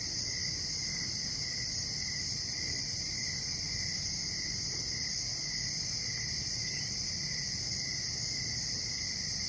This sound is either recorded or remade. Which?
recorded